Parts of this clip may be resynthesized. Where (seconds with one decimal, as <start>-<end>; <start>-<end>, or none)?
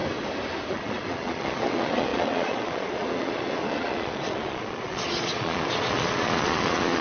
0.7-7.0